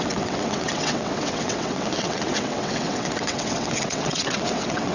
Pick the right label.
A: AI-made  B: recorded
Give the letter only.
A